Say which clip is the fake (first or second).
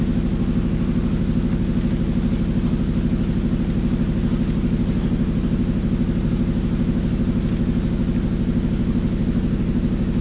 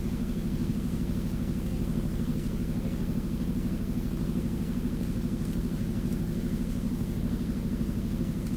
second